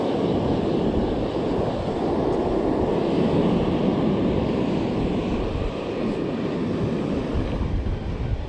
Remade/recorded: recorded